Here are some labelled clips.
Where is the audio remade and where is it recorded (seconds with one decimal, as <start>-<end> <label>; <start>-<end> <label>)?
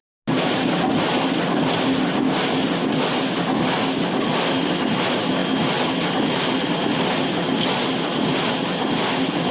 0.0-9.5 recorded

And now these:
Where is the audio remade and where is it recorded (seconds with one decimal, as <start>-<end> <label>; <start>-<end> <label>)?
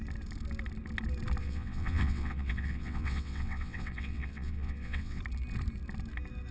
0.0-1.4 recorded; 1.4-5.2 remade; 5.2-6.5 recorded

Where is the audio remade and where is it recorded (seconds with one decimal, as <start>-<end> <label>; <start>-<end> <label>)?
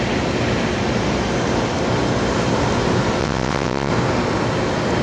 0.0-3.2 recorded; 3.2-3.9 remade; 3.9-5.0 recorded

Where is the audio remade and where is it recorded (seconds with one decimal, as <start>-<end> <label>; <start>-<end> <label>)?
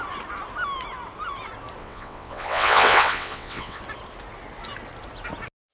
0.0-1.8 recorded; 1.8-3.8 remade; 3.8-5.7 recorded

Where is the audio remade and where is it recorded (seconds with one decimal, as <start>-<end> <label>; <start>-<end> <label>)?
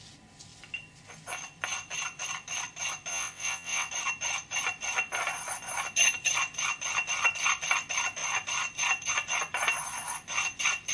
0.0-3.1 recorded; 3.1-3.9 remade; 3.9-10.9 recorded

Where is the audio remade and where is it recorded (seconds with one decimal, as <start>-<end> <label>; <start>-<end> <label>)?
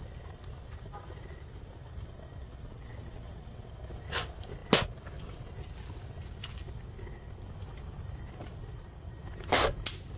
0.0-2.4 recorded; 2.4-3.7 remade; 3.7-10.2 recorded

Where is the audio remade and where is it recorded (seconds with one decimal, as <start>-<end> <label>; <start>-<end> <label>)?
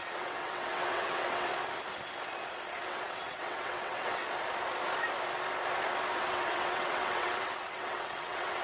0.0-1.5 remade; 1.5-2.7 recorded; 2.7-4.2 remade; 4.2-6.2 recorded; 6.2-8.6 remade